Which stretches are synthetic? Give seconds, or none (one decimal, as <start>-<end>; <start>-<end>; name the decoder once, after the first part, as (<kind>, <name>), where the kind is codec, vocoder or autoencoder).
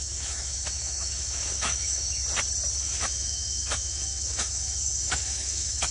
0.0-2.2 (autoencoder, DAC-VAE); 2.8-5.9